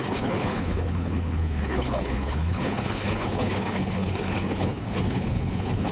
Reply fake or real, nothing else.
fake